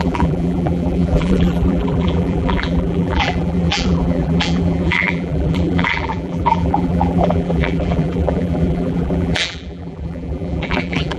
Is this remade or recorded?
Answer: remade